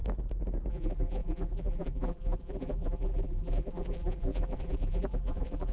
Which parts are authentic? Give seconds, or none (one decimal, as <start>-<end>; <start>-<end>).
0.0-0.7